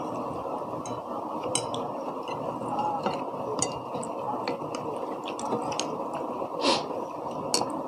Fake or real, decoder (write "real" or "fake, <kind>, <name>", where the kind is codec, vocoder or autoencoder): real